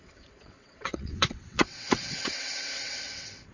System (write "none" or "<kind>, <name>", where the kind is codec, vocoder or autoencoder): vocoder, WaveNeXt